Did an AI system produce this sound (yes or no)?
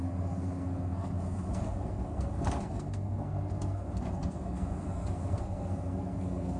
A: yes